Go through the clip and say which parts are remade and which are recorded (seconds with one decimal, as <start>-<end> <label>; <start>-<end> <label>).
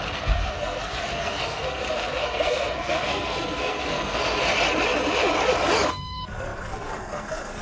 0.0-4.2 remade; 4.2-5.9 recorded; 5.9-7.6 remade